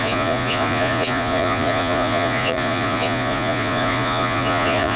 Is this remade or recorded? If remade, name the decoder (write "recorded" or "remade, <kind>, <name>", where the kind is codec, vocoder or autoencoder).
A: remade, vocoder, Vocos